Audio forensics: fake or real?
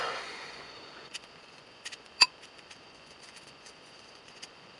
fake